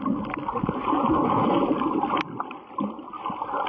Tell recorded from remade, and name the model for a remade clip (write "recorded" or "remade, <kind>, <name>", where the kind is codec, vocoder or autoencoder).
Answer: recorded